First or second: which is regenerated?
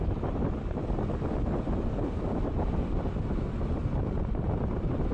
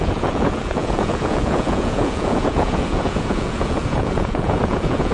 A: second